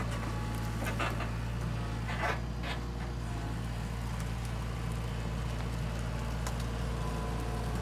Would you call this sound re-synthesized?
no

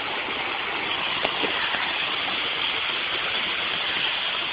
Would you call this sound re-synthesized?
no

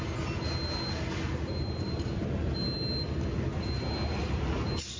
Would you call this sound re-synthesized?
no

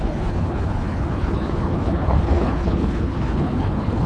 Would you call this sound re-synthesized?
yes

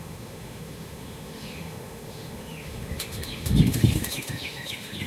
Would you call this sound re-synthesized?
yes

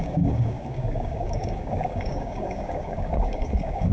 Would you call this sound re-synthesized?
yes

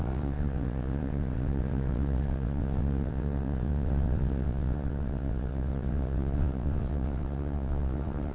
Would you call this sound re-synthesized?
yes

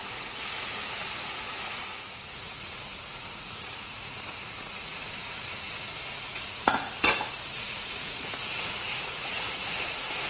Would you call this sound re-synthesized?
yes